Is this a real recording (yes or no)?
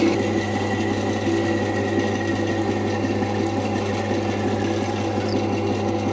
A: yes